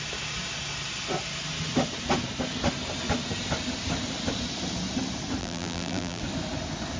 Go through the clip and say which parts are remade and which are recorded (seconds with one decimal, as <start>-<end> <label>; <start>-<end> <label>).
0.0-5.4 recorded; 5.4-6.2 remade; 6.2-7.0 recorded